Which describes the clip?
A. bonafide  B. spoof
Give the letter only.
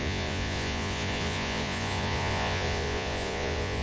B